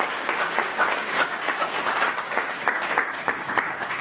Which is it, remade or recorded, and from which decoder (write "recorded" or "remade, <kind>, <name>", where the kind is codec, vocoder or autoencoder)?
remade, codec, DAC